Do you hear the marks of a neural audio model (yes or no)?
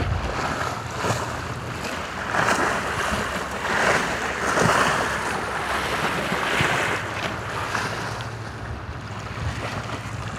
no